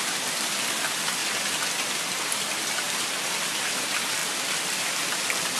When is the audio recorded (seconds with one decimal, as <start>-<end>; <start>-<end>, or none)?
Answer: 1.2-2.3